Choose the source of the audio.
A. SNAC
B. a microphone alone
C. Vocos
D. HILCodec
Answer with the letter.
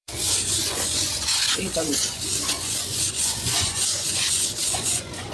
C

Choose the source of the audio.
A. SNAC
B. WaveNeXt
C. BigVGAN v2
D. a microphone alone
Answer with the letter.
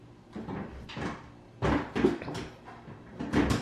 D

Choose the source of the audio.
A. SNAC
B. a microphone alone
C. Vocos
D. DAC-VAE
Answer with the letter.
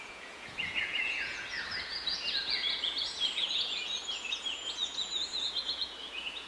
C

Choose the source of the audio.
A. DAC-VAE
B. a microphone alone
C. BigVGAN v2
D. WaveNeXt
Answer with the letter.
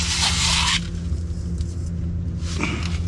B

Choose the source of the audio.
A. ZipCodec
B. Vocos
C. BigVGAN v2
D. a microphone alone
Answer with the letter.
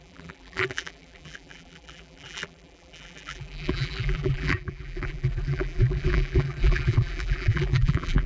C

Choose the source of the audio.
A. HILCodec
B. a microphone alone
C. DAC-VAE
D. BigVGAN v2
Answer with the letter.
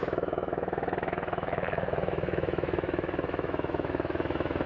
C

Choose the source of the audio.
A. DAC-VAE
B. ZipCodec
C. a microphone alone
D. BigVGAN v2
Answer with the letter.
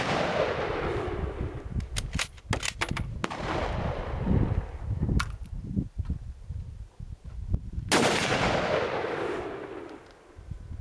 C